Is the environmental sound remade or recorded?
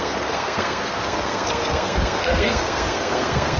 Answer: remade